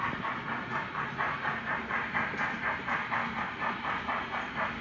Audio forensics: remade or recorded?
recorded